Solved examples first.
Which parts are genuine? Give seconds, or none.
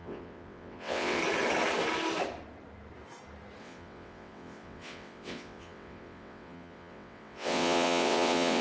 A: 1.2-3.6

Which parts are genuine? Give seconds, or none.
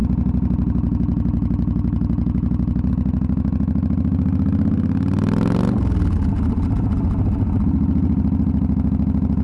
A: 0.0-9.4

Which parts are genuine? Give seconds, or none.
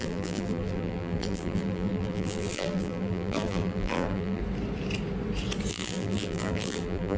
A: 4.4-5.7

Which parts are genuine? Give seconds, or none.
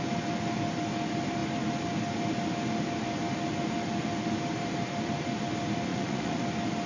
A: 0.0-5.9; 6.4-6.9